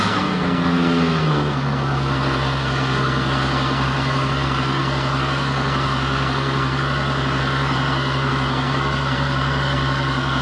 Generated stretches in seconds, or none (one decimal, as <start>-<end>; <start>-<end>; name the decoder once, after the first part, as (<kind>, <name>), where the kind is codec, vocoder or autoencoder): 0.0-10.4 (codec, SNAC)